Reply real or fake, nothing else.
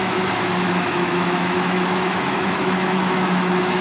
fake